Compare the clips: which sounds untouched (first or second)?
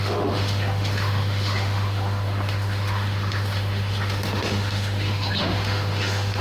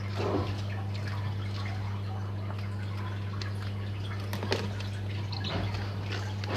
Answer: second